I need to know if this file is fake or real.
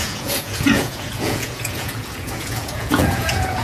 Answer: fake